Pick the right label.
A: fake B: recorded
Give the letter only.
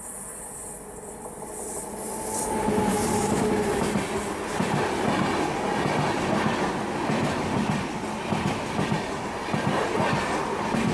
B